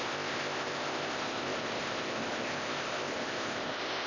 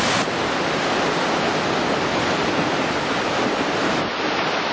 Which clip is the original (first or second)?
second